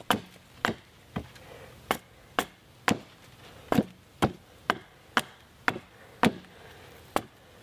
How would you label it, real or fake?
real